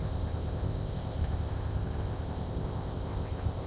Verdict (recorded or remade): remade